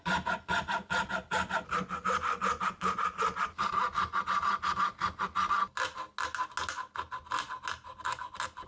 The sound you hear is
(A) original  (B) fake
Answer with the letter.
A